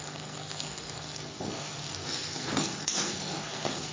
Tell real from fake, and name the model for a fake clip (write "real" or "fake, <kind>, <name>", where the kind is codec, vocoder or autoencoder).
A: fake, codec, SNAC